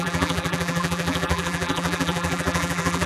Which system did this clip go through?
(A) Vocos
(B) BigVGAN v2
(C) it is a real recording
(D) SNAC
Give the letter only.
B